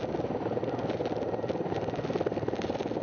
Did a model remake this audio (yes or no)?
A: no